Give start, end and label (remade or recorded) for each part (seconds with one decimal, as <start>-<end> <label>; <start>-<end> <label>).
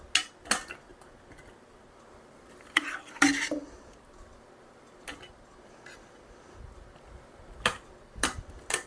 0.0-8.9 recorded